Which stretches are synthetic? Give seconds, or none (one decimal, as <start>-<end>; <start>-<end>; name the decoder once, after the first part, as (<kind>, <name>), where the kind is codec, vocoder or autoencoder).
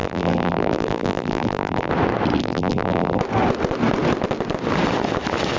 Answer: 0.0-1.9 (vocoder, BigVGAN v2); 2.4-3.2